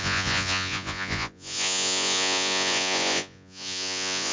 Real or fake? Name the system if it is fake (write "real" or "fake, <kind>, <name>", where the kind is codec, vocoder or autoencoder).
fake, vocoder, Vocos